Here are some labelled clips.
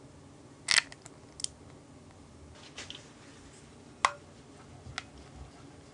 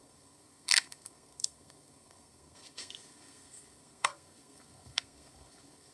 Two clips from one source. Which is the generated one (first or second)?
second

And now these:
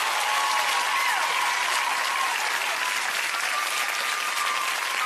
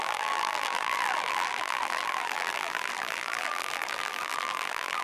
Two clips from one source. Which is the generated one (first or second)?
second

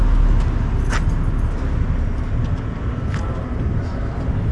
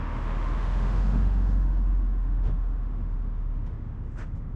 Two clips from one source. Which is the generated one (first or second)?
second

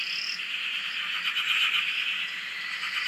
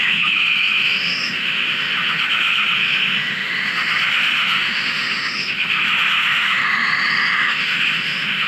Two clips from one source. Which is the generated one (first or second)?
second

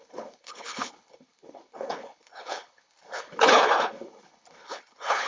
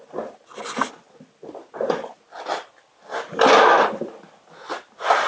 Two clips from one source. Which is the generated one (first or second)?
first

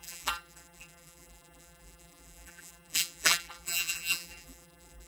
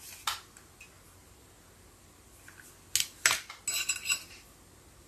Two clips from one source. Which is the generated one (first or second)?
first